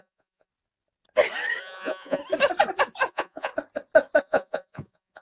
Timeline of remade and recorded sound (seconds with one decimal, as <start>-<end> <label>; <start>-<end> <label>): 0.0-0.5 remade; 0.5-1.6 recorded; 1.6-2.2 remade; 2.2-3.1 recorded; 3.1-3.5 remade; 3.5-4.2 recorded; 4.2-5.2 remade